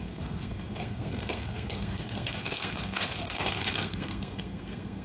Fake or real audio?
fake